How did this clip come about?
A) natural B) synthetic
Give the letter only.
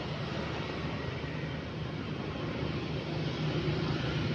A